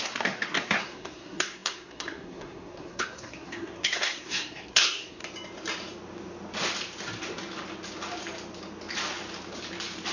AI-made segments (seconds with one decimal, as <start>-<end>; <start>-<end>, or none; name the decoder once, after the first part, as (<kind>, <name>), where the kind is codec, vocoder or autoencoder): 0.0-5.2 (codec, SNAC)